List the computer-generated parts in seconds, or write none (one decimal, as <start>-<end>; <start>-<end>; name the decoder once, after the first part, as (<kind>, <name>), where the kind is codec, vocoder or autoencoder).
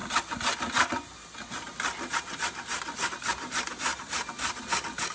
none